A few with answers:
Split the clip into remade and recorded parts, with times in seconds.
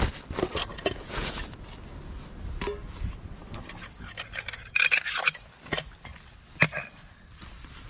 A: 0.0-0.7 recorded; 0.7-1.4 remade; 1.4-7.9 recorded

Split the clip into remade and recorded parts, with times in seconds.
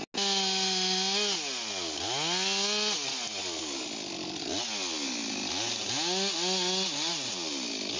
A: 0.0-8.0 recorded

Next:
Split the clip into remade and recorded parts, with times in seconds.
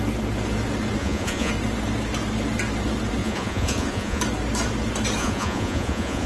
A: 0.0-1.0 recorded; 1.0-1.5 remade; 1.5-3.2 recorded; 3.2-4.2 remade; 4.2-5.2 recorded; 5.2-6.3 remade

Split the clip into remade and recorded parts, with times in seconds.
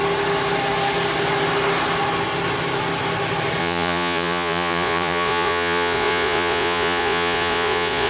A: 0.0-3.6 recorded; 3.6-8.1 remade